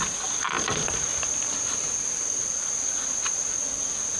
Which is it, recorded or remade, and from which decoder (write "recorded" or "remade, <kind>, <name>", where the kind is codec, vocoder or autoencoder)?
recorded